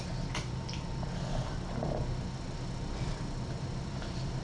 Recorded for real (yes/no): yes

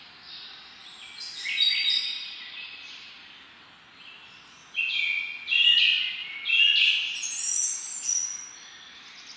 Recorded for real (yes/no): yes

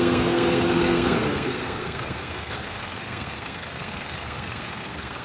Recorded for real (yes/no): no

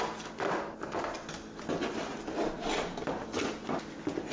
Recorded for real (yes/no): yes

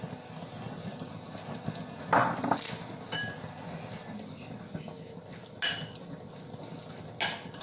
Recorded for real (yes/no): yes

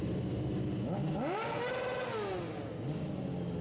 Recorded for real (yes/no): yes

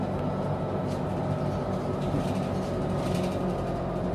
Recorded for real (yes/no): yes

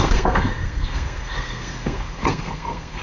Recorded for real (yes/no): no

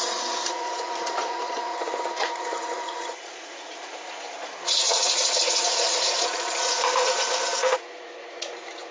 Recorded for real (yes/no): no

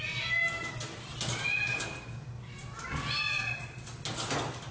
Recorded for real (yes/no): yes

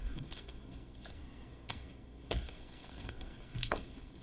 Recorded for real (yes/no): no